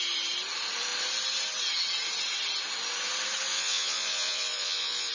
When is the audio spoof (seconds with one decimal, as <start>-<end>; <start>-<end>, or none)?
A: 3.5-5.1